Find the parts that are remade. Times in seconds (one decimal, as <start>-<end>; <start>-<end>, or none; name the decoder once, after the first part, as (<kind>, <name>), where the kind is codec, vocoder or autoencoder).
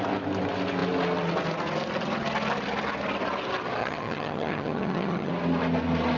3.8-5.3 (vocoder, HiFi-GAN)